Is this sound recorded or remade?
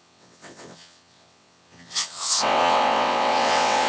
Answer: remade